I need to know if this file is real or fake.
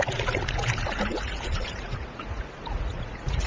fake